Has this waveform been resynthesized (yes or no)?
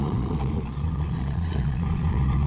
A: yes